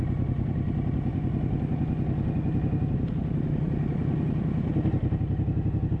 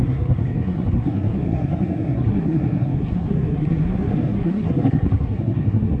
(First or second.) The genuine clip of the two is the first